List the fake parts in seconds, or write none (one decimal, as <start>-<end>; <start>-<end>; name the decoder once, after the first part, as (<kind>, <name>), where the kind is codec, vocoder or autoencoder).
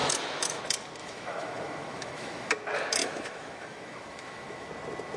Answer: 0.0-0.6 (autoencoder, DAC-VAE); 1.0-2.5; 3.0-4.7